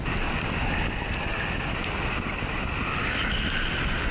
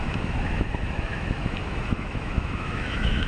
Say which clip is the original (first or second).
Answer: first